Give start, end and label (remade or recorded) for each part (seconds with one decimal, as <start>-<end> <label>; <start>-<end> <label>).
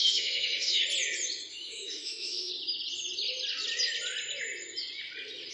0.0-0.8 remade; 0.8-1.5 recorded; 1.5-2.5 remade; 2.5-5.5 recorded